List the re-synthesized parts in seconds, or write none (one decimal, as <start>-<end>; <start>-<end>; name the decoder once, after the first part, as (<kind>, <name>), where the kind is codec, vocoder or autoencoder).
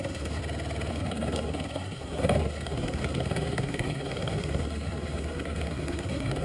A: 0.0-0.4 (codec, SNAC); 0.9-6.4